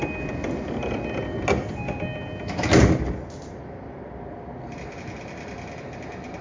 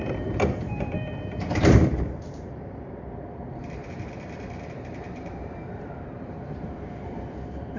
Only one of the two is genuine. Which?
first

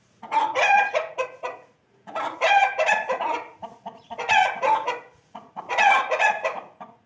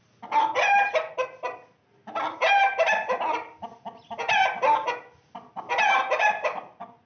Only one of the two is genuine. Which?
second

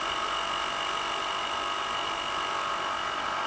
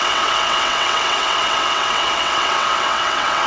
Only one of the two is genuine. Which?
first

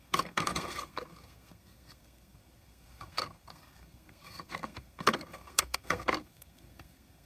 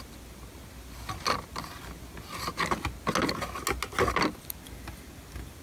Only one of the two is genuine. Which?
second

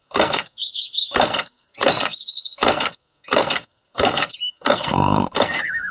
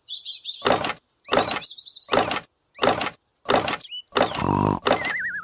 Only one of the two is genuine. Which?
second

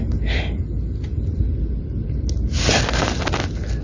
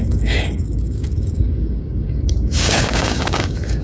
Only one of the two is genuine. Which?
first